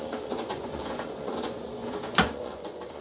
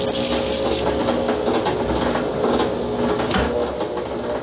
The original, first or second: second